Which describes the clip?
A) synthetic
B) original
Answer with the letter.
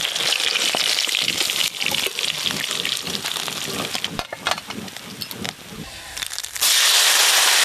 B